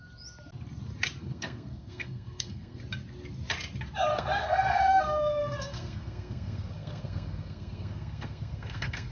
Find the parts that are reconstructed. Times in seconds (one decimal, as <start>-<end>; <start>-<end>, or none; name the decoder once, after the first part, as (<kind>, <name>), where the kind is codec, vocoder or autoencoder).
1.2-2.8 (codec, SNAC); 4.1-9.1